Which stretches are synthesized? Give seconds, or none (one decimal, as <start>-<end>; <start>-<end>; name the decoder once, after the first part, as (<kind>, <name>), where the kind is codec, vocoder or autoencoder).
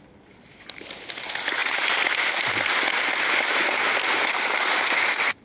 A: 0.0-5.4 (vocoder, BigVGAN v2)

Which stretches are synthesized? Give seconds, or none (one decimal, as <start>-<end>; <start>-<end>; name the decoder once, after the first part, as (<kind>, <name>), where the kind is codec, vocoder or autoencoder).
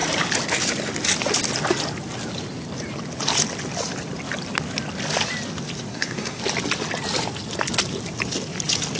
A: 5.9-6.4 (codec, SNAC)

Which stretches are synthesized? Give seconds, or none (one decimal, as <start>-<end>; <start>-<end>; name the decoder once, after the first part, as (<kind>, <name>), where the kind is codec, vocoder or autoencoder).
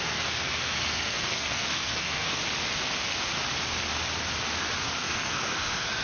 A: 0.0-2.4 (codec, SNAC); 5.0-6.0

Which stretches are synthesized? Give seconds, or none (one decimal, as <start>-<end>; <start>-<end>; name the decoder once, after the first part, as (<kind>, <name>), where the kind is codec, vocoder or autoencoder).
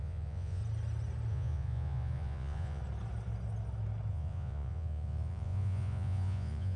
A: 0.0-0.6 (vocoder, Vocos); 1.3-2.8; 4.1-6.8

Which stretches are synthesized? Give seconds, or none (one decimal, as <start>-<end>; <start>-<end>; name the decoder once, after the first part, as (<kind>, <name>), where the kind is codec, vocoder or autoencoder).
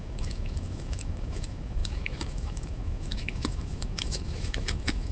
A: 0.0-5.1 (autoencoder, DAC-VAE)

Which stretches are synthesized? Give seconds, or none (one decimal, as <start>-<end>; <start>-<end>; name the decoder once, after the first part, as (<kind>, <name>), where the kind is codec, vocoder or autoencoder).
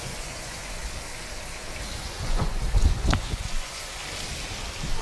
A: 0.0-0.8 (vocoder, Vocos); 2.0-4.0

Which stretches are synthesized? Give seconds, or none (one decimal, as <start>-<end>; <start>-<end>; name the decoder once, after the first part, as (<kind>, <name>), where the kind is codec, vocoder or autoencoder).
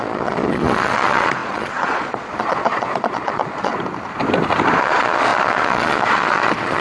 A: 0.0-3.7 (vocoder, Vocos); 4.8-6.8